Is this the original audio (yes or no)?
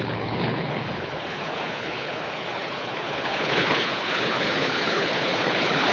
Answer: no